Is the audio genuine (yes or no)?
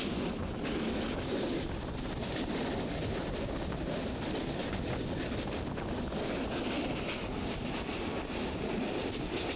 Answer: yes